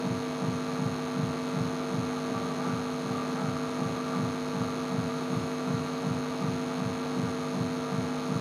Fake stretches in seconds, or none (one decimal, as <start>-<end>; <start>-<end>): 5.1-6.0